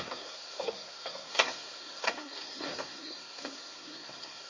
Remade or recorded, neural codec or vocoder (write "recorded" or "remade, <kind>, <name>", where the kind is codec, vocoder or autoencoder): remade, codec, SNAC